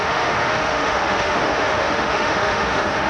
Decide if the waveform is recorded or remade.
remade